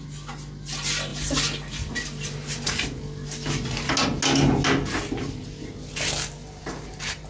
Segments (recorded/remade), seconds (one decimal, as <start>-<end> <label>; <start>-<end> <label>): 0.0-6.4 recorded; 6.4-7.3 remade